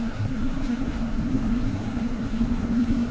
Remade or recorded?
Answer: remade